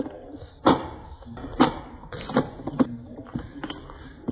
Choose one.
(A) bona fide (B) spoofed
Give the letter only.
B